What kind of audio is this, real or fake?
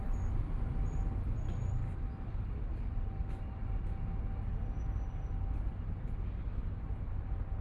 real